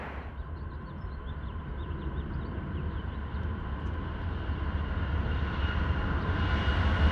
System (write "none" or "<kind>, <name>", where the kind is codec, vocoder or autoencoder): none